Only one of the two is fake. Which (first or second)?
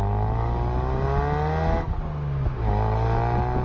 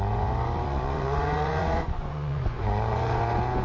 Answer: second